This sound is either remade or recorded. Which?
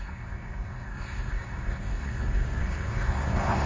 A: remade